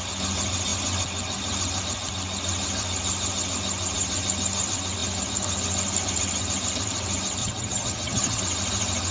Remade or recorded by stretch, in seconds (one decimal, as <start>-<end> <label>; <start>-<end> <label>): 0.0-7.4 recorded; 7.4-8.4 remade; 8.4-9.1 recorded